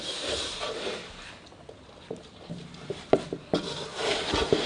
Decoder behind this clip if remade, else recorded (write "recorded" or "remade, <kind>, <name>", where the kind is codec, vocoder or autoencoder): recorded